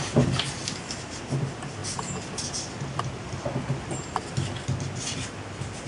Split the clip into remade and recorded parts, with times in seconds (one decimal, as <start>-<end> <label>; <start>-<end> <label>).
0.0-5.9 recorded